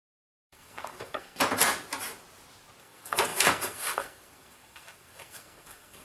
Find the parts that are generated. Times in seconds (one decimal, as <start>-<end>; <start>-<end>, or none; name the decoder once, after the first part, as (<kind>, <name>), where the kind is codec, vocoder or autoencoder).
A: 0.0-1.4 (codec, SNAC); 2.8-6.0